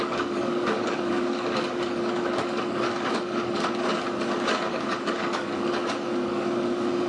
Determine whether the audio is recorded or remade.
remade